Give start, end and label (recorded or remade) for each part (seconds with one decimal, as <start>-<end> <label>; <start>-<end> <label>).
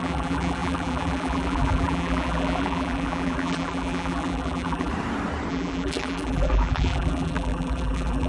0.0-4.9 remade; 4.9-5.5 recorded; 5.5-8.3 remade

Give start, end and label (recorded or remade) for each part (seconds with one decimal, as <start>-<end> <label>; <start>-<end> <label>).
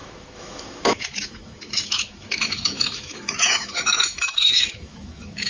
0.0-5.5 remade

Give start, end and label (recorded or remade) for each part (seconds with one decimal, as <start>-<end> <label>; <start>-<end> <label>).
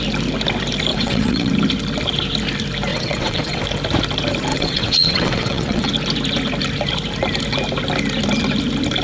0.0-0.9 recorded; 0.9-1.5 remade; 1.5-2.9 recorded; 2.9-3.6 remade; 3.6-4.5 recorded; 4.5-5.9 remade; 5.9-9.0 recorded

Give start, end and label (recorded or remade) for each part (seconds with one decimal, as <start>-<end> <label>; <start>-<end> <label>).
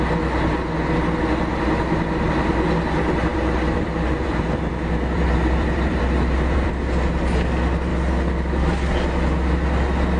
0.0-3.3 recorded; 3.3-6.7 remade; 6.7-10.2 recorded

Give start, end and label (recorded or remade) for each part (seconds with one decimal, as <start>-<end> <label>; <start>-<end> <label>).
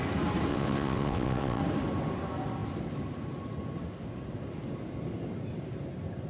0.0-0.5 recorded; 0.5-1.6 remade; 1.6-6.3 recorded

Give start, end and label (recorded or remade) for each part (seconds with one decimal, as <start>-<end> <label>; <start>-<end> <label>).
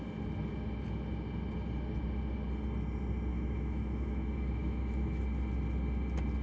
0.0-3.3 recorded; 3.3-5.2 remade; 5.2-6.4 recorded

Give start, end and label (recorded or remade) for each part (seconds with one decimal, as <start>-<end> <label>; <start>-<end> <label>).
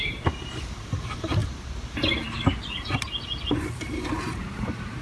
0.0-1.4 remade; 1.4-3.6 recorded; 3.6-5.0 remade